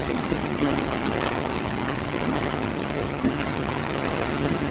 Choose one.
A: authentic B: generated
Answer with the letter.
B